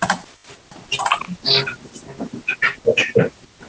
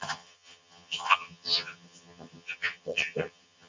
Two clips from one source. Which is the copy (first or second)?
second